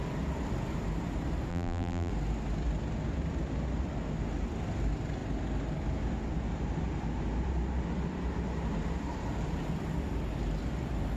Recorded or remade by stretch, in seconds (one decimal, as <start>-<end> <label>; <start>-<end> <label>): 0.0-1.5 recorded; 1.5-2.1 remade; 2.1-11.2 recorded